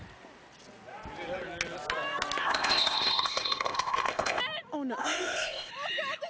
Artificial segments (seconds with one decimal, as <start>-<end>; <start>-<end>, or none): 2.4-4.4; 5.0-5.7